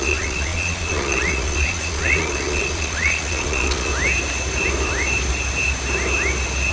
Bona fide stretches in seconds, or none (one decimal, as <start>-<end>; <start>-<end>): 3.9-6.7